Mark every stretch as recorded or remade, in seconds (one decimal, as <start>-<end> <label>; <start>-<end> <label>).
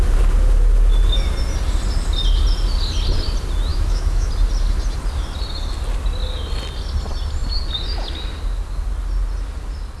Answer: 0.0-3.7 recorded; 3.7-4.3 remade; 4.3-10.0 recorded